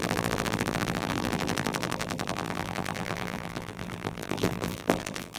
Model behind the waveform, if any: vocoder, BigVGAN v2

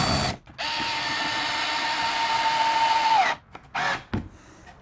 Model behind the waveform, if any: none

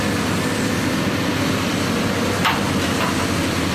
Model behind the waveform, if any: none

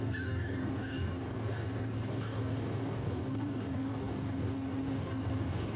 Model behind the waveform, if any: codec, DAC